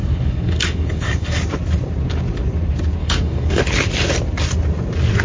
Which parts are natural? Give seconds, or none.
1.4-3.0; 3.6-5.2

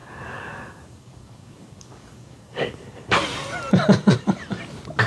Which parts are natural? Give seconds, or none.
3.1-5.1